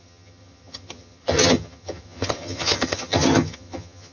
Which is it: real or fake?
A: fake